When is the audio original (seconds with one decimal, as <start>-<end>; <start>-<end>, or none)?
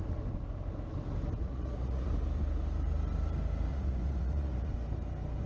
0.0-1.4; 2.1-3.7; 4.7-5.5